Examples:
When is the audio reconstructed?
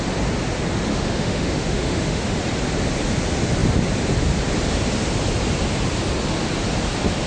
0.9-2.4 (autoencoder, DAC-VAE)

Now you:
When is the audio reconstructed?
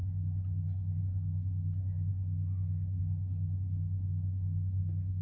2.1-3.0 (codec, DAC); 4.1-5.2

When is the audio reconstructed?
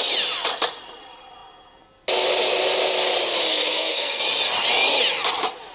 3.5-4.2 (codec, SNAC)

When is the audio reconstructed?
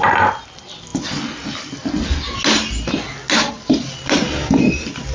none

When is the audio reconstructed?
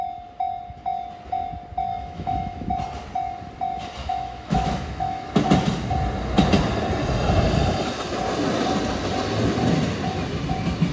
1.9-2.7 (autoencoder, DAC-VAE); 4.0-5.3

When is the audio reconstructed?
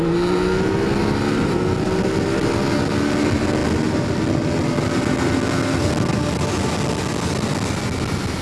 none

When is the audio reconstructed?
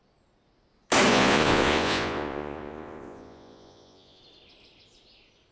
1.1-4.2 (vocoder, Vocos)